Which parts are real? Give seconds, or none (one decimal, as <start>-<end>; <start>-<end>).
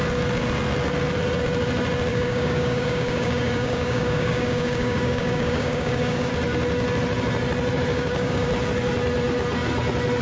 0.0-2.1; 6.3-7.9; 8.5-10.2